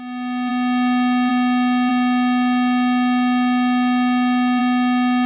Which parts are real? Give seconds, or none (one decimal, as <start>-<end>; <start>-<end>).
0.0-5.3